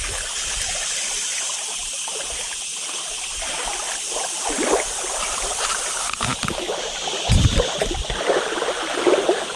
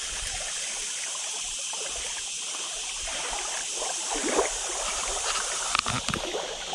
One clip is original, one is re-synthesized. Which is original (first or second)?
second